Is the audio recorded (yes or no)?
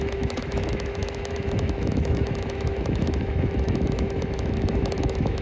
no